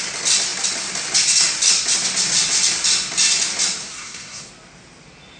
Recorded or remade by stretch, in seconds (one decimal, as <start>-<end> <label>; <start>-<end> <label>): 0.0-3.8 recorded; 3.8-4.5 remade; 4.5-5.4 recorded